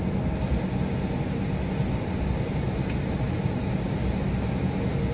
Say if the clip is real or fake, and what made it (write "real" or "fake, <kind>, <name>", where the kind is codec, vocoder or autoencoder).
real